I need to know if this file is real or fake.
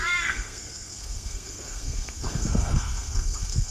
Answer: fake